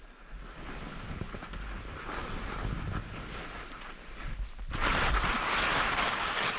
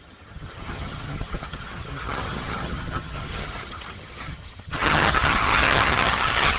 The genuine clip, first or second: first